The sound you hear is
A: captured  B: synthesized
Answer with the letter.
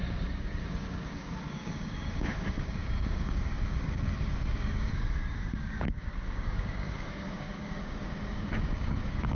B